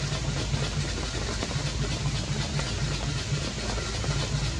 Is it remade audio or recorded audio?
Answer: recorded